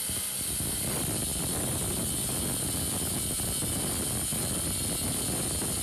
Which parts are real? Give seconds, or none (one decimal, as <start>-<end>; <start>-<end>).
0.0-5.8

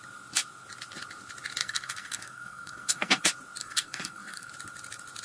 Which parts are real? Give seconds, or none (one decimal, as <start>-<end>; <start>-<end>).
0.0-1.6; 3.2-3.6; 4.5-5.2

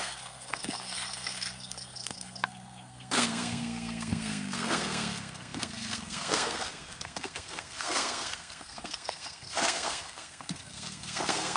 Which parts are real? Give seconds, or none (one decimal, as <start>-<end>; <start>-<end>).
none

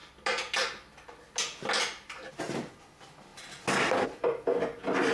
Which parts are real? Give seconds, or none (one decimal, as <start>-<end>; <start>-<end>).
0.0-5.1

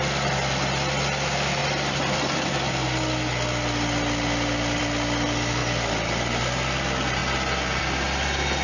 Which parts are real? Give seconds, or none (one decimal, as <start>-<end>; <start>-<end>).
0.0-8.6

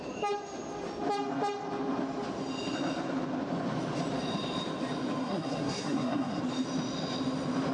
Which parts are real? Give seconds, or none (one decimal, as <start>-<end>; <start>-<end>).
0.0-5.2; 6.4-7.7

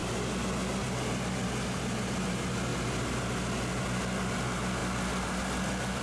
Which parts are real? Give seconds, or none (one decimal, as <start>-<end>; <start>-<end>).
0.0-6.0